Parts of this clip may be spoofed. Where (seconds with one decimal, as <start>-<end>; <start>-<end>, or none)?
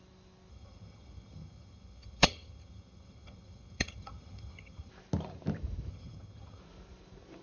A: 0.5-4.9; 5.9-6.6